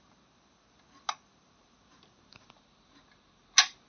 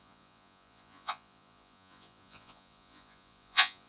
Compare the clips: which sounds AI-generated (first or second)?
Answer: second